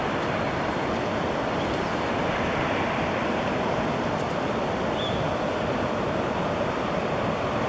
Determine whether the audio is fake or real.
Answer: fake